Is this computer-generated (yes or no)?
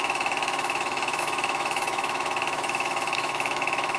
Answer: yes